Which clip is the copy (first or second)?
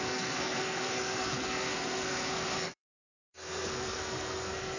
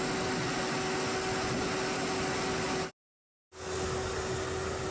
first